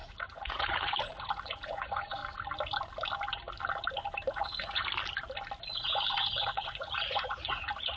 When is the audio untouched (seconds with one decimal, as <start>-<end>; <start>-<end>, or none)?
2.2-4.3; 4.8-5.6